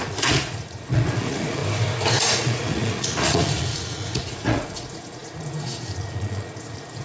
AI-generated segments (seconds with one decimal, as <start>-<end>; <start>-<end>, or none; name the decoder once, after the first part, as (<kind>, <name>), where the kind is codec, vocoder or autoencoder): 0.0-1.6 (vocoder, Vocos); 2.1-7.0